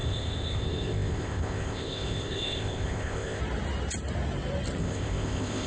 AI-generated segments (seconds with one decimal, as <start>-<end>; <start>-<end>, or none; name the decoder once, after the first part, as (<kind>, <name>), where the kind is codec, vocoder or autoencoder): 0.0-3.4 (codec, ZipCodec); 4.8-5.7